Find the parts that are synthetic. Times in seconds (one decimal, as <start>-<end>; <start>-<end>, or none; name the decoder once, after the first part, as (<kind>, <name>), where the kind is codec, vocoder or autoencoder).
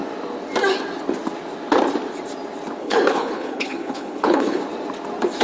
2.8-4.6 (codec, HILCodec)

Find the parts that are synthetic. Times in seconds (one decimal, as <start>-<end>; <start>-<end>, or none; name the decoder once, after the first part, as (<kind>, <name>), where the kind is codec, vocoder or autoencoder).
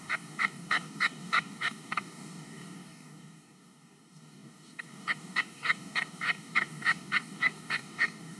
0.0-8.4 (codec, DAC)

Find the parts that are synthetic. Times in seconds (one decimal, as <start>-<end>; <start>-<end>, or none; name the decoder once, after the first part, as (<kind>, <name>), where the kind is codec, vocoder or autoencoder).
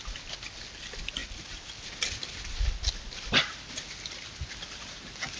none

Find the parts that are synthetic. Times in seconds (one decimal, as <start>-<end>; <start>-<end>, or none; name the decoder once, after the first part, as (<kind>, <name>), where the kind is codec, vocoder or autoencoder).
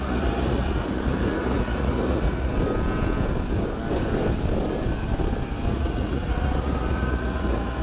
0.0-2.5 (vocoder, Vocos); 5.7-7.8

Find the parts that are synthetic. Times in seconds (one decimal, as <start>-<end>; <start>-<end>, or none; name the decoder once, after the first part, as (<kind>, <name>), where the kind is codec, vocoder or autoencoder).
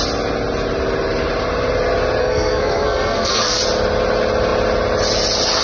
2.2-3.6 (codec, SNAC)